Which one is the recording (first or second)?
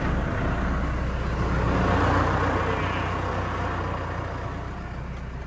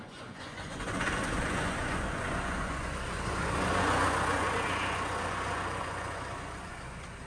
first